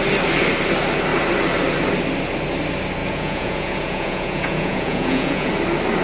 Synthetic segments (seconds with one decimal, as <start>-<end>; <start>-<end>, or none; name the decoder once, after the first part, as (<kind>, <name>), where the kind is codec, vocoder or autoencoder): 3.0-5.5 (vocoder, Vocos)